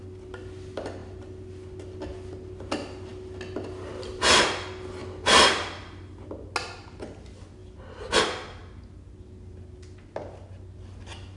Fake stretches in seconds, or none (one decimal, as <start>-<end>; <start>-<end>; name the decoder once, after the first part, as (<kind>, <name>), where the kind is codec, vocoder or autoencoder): 5.0-6.2 (vocoder, BigVGAN v2)